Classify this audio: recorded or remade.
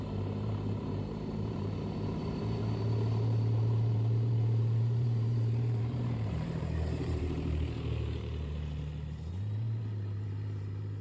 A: remade